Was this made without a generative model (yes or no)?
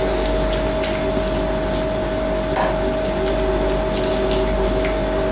yes